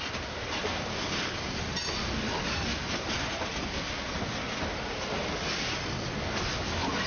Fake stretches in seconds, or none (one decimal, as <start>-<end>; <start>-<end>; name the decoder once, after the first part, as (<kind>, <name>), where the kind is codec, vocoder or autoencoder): none